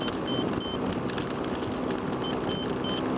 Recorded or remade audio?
recorded